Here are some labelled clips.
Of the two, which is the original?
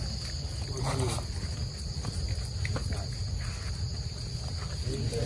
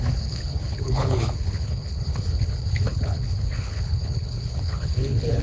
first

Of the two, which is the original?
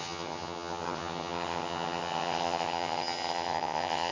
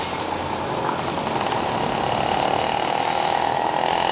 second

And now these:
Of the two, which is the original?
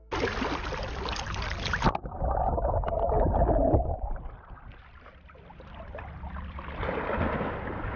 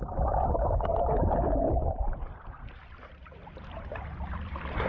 first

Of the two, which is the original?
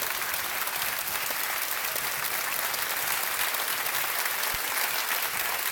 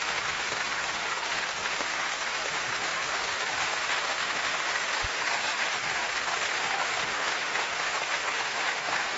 first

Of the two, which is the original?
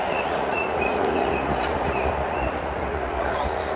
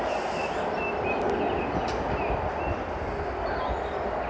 second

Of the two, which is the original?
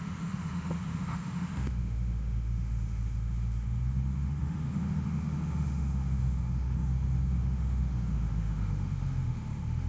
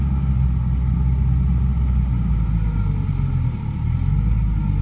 second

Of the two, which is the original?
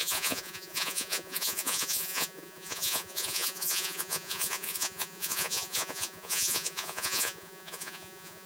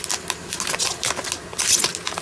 second